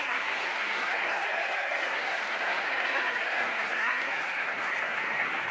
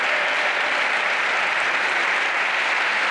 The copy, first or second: first